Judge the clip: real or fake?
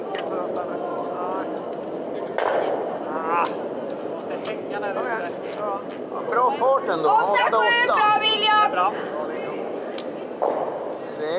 real